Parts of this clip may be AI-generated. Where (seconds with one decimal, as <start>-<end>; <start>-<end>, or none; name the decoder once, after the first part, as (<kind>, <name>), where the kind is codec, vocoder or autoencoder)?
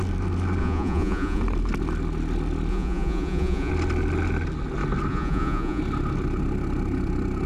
0.6-1.4 (vocoder, Vocos); 2.7-3.7; 5.1-5.8